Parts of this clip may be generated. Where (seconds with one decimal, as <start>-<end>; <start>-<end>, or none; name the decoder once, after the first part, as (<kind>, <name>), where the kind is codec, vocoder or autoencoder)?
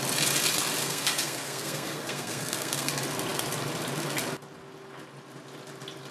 0.8-2.9 (codec, SNAC)